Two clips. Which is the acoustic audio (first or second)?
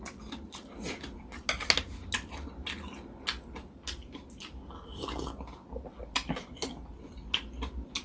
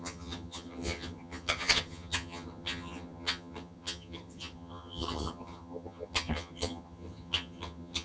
first